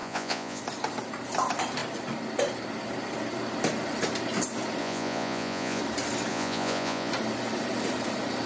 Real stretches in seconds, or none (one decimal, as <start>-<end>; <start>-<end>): 0.6-4.8; 5.8-6.3; 7.1-8.5